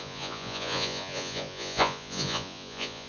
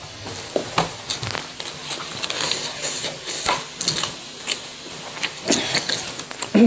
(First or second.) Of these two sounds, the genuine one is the second